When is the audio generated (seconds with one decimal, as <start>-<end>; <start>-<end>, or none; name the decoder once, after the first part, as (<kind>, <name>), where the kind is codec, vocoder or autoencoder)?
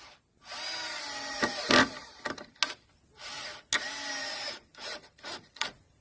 4.3-6.0 (vocoder, Vocos)